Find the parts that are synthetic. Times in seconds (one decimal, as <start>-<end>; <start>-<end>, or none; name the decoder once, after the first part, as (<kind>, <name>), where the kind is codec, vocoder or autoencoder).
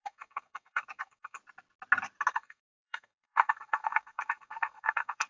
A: 0.0-1.4 (codec, SNAC); 2.3-5.3